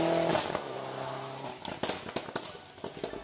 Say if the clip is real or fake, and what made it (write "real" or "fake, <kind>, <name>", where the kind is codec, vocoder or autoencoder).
real